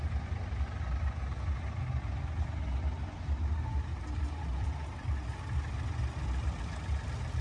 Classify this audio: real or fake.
real